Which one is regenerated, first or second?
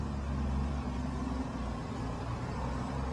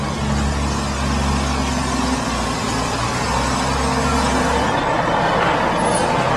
first